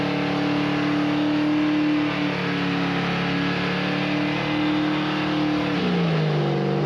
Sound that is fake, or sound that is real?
real